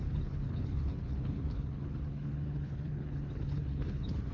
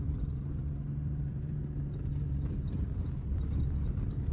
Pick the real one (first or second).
second